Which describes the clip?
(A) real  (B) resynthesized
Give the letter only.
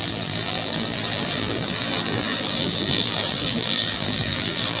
B